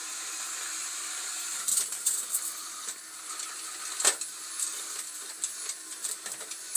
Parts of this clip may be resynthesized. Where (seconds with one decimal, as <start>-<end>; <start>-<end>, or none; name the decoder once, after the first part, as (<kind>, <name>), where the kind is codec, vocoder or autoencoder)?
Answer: 0.0-0.8 (vocoder, BigVGAN v2); 4.7-5.3